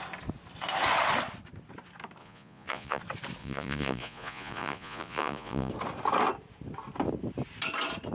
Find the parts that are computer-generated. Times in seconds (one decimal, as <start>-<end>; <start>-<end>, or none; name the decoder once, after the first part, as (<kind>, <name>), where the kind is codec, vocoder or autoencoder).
2.2-3.0 (vocoder, Vocos); 3.4-5.7